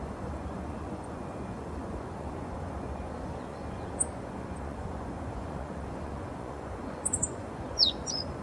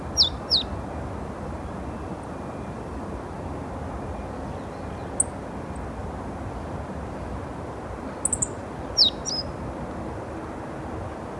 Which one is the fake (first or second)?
first